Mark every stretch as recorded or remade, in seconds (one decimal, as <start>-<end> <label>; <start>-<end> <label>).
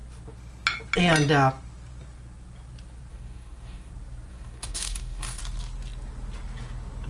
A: 0.0-3.1 recorded; 3.1-3.9 remade; 3.9-4.3 recorded; 4.3-5.4 remade; 5.4-7.1 recorded